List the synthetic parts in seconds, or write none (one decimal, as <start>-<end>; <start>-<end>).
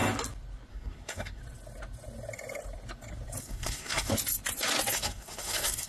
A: 0.7-1.4; 3.4-4.1; 4.9-5.9